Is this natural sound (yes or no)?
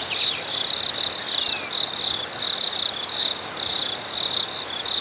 yes